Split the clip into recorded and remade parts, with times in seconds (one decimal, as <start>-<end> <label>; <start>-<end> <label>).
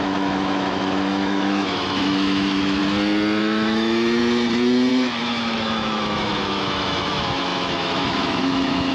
0.0-2.8 remade; 2.8-3.4 recorded; 3.4-4.2 remade; 4.2-4.9 recorded; 4.9-8.9 remade